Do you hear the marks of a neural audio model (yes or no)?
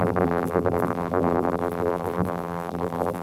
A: yes